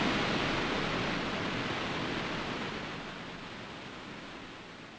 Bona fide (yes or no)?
yes